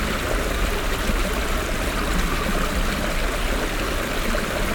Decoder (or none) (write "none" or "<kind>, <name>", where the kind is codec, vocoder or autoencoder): none